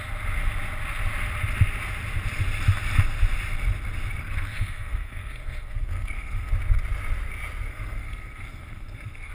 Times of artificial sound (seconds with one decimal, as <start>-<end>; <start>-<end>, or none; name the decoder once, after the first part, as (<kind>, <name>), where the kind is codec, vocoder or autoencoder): 4.2-6.5 (codec, SNAC); 7.7-9.3